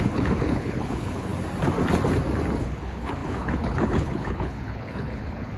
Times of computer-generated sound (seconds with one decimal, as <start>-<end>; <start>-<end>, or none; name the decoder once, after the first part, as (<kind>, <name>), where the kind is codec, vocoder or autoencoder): 0.0-1.3 (codec, HILCodec); 2.6-5.6